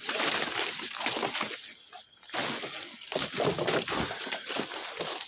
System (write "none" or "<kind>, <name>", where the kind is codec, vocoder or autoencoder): none